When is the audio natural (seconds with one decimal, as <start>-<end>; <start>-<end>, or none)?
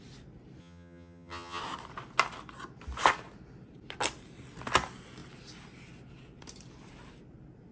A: 0.0-0.6; 1.6-7.7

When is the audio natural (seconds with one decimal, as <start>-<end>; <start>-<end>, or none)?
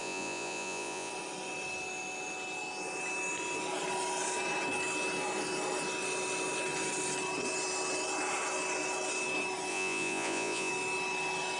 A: 1.1-9.7; 10.7-11.6